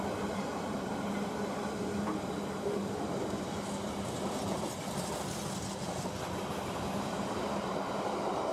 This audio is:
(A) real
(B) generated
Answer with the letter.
A